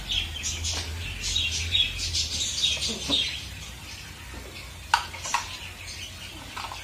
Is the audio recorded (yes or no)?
yes